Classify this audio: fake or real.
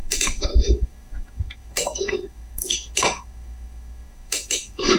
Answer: fake